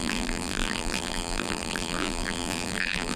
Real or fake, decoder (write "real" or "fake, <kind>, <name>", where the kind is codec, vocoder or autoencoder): fake, vocoder, BigVGAN v2